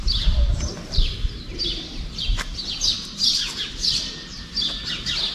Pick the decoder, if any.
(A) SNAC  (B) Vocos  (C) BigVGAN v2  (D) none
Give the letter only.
C